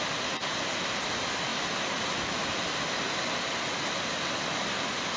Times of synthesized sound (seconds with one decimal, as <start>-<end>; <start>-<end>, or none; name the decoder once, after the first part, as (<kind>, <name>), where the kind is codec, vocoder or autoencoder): none